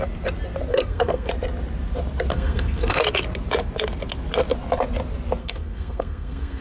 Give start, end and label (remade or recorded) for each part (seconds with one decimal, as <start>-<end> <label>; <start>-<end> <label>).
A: 0.0-0.7 recorded; 0.7-1.3 remade; 1.3-2.3 recorded; 2.3-3.0 remade; 3.0-5.4 recorded; 5.4-6.6 remade